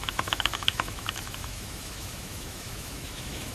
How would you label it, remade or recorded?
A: remade